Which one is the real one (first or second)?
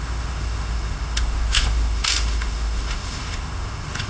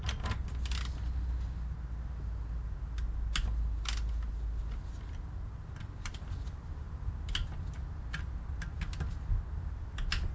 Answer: second